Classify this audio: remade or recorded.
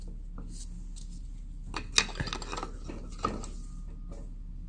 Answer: recorded